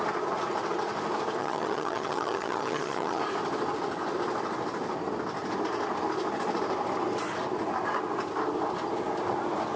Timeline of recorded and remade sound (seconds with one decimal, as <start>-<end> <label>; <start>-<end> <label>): 0.0-1.4 recorded; 1.4-3.2 remade; 3.2-9.8 recorded